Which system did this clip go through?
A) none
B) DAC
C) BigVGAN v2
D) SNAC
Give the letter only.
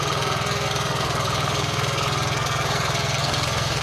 D